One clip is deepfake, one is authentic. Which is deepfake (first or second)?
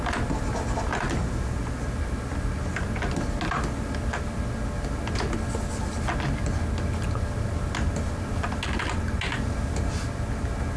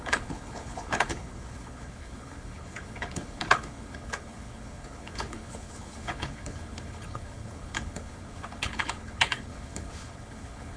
second